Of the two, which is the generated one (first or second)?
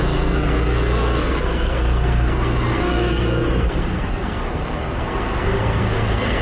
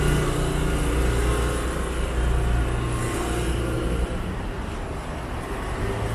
first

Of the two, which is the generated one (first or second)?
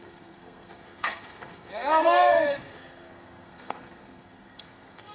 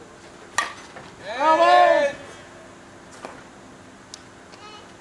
first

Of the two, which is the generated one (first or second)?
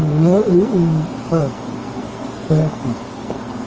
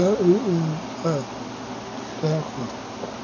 first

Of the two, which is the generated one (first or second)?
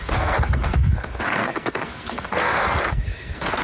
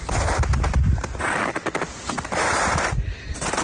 first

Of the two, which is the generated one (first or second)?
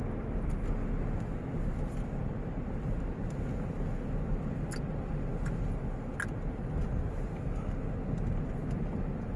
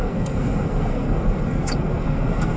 second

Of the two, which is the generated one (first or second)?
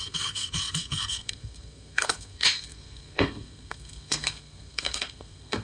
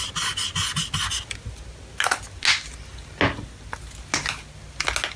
first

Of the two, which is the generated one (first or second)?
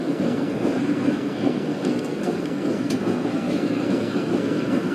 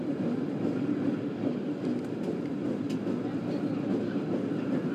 first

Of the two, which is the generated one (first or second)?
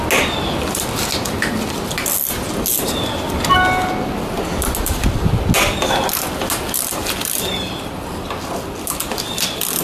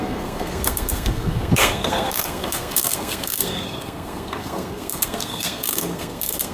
second